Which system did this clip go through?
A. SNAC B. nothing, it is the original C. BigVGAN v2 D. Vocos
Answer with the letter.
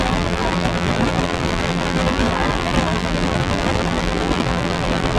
C